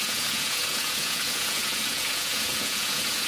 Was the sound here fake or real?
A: fake